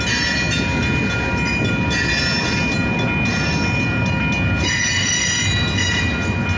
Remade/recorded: recorded